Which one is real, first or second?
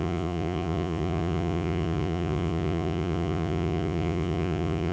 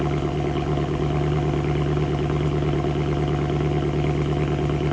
second